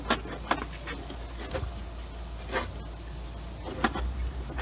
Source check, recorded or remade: recorded